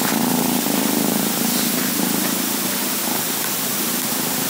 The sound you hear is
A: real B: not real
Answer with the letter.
A